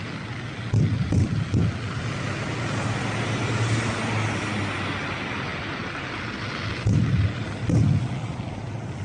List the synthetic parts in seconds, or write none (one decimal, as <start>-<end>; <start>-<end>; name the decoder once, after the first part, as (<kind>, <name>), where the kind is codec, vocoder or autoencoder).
none